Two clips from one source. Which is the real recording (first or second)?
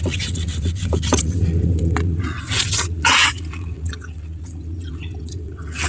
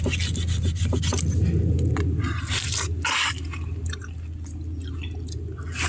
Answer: second